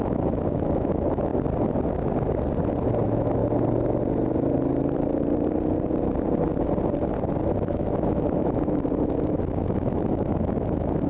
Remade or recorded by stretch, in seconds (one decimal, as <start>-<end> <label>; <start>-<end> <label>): 0.0-1.3 remade; 1.3-3.0 recorded; 3.0-3.4 remade; 3.4-7.5 recorded; 7.5-11.1 remade